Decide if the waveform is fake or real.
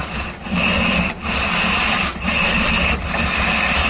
real